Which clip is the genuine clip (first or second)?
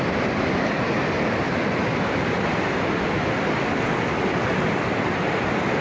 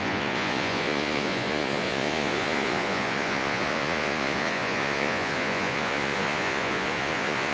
first